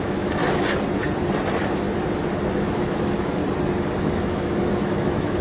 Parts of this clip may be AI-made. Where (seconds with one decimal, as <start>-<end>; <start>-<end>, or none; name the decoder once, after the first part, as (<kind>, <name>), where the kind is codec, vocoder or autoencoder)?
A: 0.0-0.4 (autoencoder, DAC-VAE); 2.6-3.4; 4.0-5.4